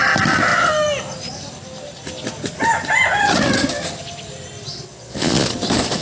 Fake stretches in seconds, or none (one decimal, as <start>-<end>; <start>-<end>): 4.9-5.5